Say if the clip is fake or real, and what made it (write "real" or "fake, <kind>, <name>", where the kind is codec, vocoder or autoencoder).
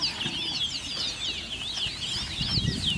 real